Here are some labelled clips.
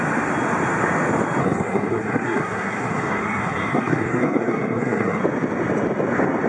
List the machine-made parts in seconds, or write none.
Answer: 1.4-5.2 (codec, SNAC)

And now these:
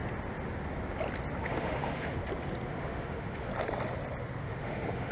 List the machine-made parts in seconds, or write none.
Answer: 1.4-2.2 (autoencoder, DAC-VAE); 2.7-3.5; 4.4-5.1

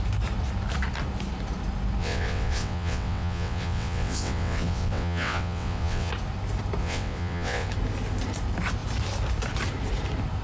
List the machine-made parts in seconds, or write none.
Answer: 2.0-6.1 (vocoder, WaveNeXt); 6.8-7.7